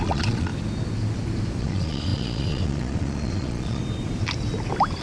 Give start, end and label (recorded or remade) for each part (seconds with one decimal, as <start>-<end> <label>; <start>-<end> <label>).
0.0-0.5 remade; 0.5-1.6 recorded; 1.6-3.8 remade; 3.8-5.0 recorded